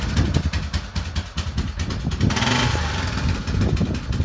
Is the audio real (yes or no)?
yes